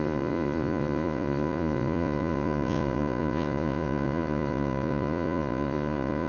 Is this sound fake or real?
fake